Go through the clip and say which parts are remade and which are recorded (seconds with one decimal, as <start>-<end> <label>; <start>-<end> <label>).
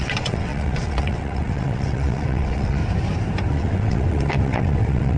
0.0-2.8 remade; 2.8-3.5 recorded; 3.5-5.2 remade